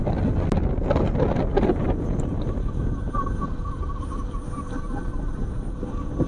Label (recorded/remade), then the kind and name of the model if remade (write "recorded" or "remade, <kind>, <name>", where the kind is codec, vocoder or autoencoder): recorded